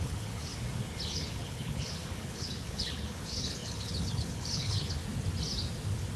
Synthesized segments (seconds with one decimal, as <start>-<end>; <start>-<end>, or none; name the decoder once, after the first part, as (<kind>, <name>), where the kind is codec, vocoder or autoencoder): 0.0-0.5 (codec, HILCodec); 1.1-5.0